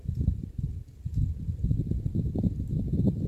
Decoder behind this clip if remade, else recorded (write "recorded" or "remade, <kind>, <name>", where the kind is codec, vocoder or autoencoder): recorded